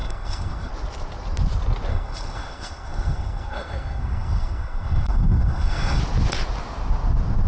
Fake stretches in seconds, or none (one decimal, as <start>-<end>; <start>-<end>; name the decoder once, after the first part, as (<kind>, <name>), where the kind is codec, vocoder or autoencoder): 0.0-0.7 (codec, SNAC); 1.9-6.0